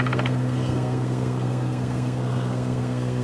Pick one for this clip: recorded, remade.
remade